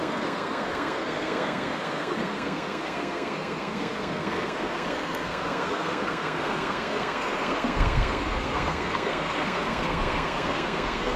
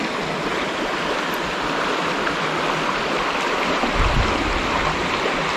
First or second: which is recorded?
second